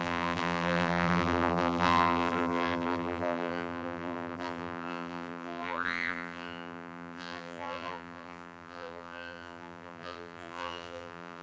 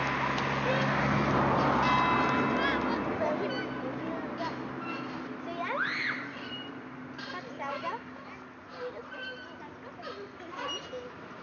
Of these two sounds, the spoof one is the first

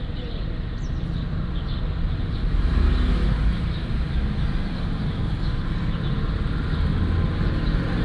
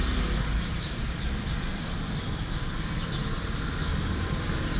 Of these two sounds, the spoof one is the second